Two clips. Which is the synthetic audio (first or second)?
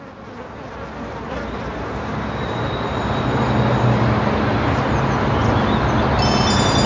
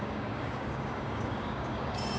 second